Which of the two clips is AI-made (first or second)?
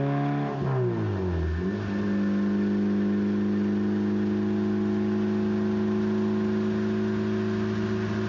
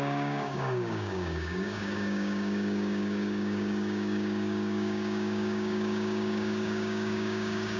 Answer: second